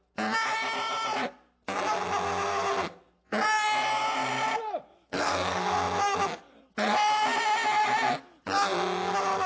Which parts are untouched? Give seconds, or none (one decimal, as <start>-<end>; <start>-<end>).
0.0-4.9; 5.6-9.5